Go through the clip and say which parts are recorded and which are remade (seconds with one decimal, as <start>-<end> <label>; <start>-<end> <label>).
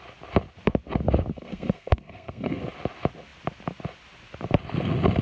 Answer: 0.0-1.3 recorded; 1.3-2.6 remade; 2.6-5.2 recorded